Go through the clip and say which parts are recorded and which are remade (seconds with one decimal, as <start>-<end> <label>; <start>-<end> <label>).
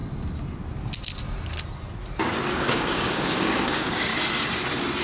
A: 0.0-2.5 recorded; 2.5-4.1 remade; 4.1-5.0 recorded